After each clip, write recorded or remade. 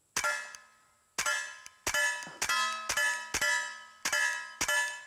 recorded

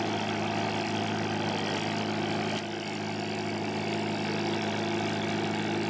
recorded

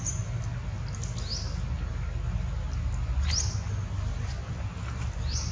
recorded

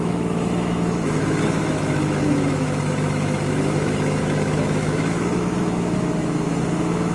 remade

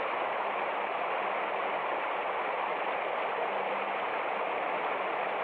recorded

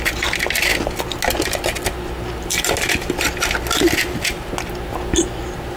recorded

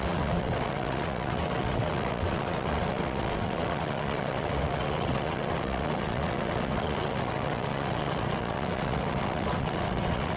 remade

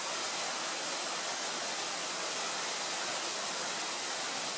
recorded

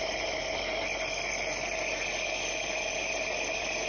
recorded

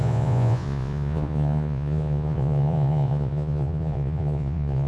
remade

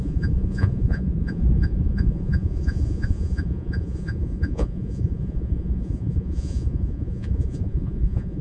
remade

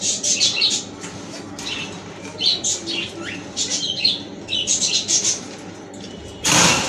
recorded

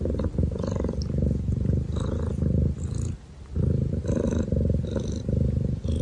recorded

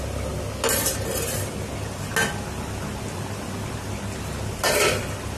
recorded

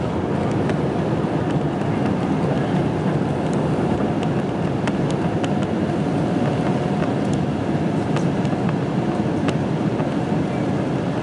recorded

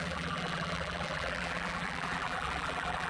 remade